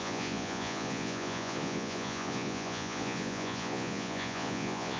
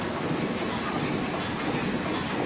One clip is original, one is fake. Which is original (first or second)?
second